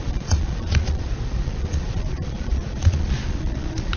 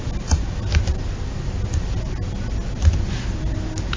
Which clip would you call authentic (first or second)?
second